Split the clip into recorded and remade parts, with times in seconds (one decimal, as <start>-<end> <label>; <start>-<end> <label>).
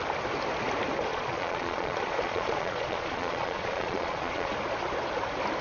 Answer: 0.0-1.1 recorded; 1.1-4.5 remade; 4.5-5.6 recorded